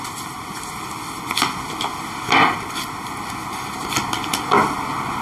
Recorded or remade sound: recorded